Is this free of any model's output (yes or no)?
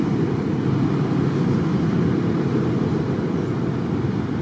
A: yes